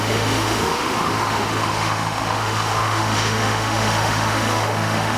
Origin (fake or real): fake